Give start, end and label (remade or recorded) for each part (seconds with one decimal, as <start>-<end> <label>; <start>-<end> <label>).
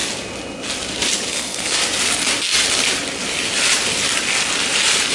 0.0-1.3 recorded; 1.3-1.8 remade; 1.8-5.1 recorded